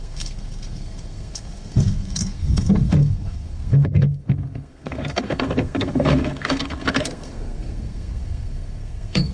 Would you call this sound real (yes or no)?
no